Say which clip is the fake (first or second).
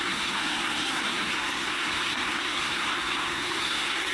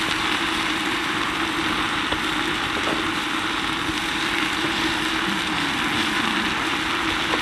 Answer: first